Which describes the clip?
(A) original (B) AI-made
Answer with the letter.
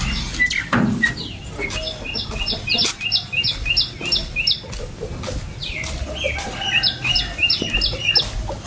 A